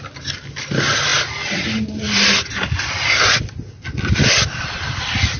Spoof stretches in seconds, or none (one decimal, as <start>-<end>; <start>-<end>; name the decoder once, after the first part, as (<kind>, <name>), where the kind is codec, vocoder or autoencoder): none